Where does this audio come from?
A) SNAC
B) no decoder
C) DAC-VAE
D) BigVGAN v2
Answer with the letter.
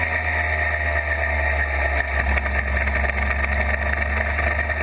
B